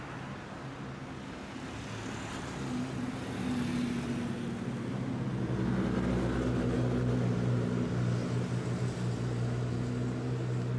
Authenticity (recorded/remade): recorded